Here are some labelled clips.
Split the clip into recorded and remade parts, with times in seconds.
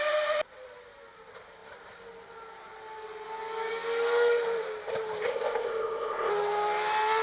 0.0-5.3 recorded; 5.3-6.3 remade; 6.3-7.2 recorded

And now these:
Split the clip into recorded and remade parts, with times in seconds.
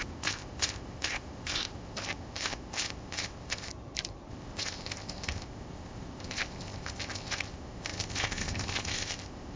0.0-3.7 remade; 3.7-4.3 recorded; 4.3-9.6 remade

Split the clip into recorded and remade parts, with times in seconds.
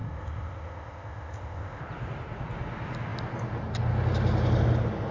0.0-1.8 remade; 1.8-5.1 recorded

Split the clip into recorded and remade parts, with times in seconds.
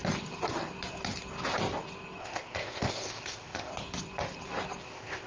0.0-2.2 recorded; 2.2-3.7 remade; 3.7-4.8 recorded; 4.8-5.3 remade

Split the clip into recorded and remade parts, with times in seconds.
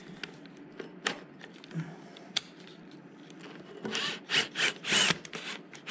0.0-5.9 recorded